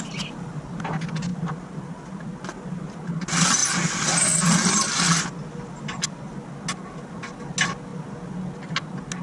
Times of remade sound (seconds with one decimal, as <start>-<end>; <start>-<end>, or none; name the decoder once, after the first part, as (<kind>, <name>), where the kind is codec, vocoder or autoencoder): none